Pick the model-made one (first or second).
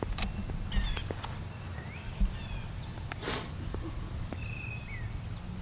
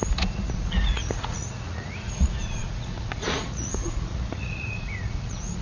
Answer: second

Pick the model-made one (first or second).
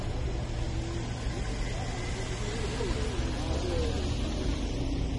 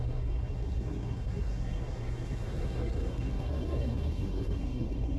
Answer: second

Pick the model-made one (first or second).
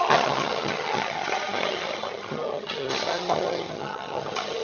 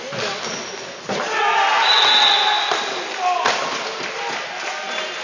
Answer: first